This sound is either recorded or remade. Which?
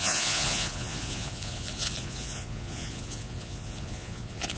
remade